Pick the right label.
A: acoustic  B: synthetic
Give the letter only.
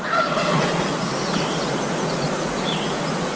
B